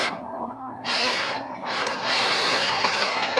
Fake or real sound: fake